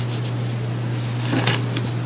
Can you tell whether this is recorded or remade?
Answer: recorded